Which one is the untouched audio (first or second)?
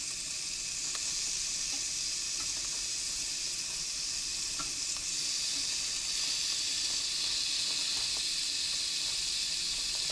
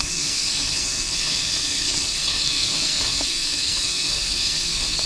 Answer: first